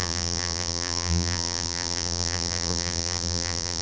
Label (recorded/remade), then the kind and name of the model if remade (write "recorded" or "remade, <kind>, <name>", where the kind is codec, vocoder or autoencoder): remade, vocoder, BigVGAN v2